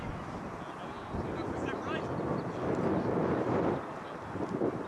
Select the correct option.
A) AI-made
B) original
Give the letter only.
B